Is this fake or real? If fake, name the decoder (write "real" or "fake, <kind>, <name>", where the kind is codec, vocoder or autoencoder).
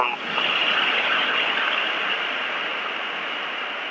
real